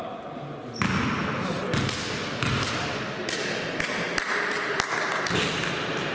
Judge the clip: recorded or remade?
recorded